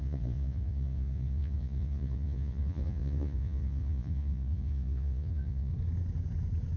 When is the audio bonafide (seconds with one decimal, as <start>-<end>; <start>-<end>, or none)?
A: 5.7-6.8